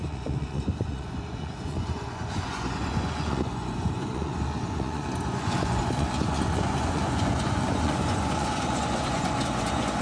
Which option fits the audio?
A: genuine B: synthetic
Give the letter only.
B